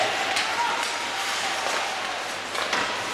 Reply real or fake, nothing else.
real